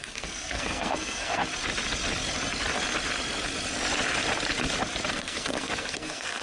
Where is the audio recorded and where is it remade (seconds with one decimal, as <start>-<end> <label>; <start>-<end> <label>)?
0.0-1.4 remade; 1.4-5.1 recorded; 5.1-6.4 remade